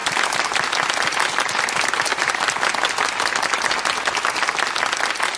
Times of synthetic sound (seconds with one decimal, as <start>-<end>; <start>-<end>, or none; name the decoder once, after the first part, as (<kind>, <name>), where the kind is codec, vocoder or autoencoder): none